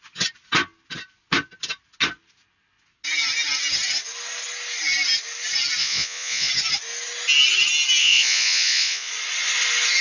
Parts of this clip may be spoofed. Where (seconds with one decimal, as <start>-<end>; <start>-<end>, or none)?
5.8-6.5; 8.0-9.1